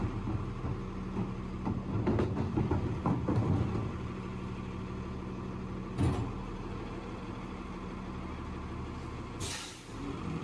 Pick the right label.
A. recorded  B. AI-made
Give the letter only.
A